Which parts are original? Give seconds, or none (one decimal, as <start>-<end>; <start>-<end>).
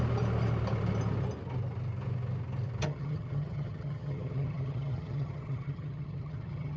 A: 0.0-2.8